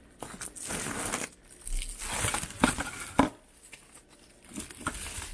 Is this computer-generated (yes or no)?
no